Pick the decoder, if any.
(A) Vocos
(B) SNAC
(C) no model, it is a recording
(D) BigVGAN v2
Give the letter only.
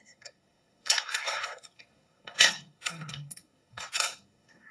B